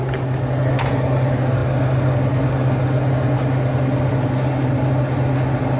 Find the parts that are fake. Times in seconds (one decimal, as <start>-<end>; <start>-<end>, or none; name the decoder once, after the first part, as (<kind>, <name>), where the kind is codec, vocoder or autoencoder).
none